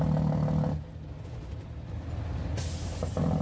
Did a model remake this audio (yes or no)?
no